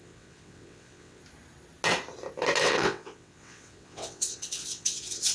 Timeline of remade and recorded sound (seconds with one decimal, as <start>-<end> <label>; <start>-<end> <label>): 0.0-1.2 remade; 1.2-2.6 recorded; 2.6-5.3 remade